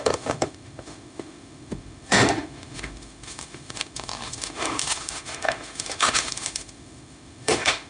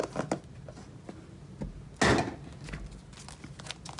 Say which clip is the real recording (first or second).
second